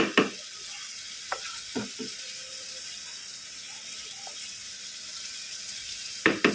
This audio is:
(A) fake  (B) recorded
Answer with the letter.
B